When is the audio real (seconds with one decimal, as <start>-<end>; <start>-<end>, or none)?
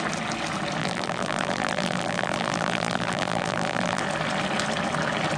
0.0-0.8; 4.0-5.4